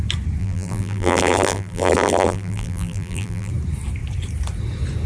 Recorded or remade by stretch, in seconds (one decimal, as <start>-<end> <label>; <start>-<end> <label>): 0.0-0.4 recorded; 0.4-3.5 remade; 3.5-5.1 recorded